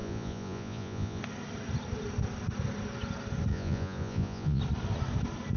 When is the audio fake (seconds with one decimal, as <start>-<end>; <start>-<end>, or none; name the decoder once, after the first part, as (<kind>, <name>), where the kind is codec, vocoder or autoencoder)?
0.0-1.2 (vocoder, Vocos); 3.5-4.6